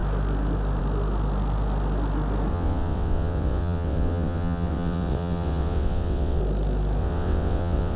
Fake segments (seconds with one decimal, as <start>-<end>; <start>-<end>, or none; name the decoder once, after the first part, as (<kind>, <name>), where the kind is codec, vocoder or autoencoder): 2.5-6.4 (vocoder, WaveNeXt); 7.0-8.0